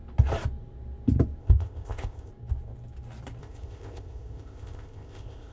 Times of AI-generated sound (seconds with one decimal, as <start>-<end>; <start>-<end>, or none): 1.4-2.3; 3.4-5.5